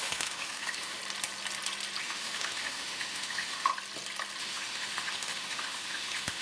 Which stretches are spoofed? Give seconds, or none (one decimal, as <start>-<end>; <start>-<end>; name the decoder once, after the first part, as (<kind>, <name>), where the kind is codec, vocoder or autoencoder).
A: 0.0-1.0 (autoencoder, DAC-VAE); 2.0-3.7; 4.4-6.4